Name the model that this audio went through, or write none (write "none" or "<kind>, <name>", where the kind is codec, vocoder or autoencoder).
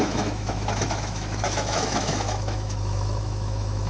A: autoencoder, DAC-VAE